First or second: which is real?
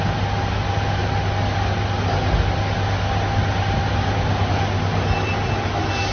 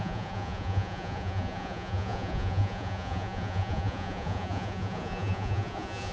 first